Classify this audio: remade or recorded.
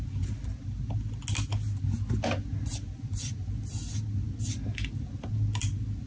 recorded